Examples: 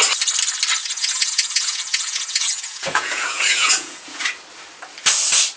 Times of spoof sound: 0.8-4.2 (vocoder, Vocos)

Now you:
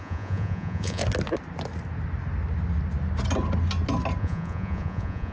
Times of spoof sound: 0.0-1.0 (vocoder, Vocos); 4.2-5.3

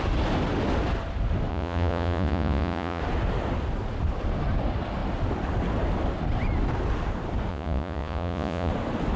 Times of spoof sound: 1.5-3.0 (vocoder, Vocos); 7.5-8.7